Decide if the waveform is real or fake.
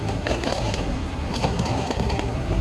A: fake